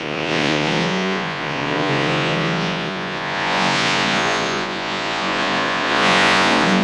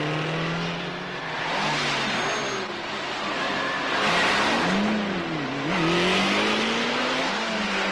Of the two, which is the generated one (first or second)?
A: first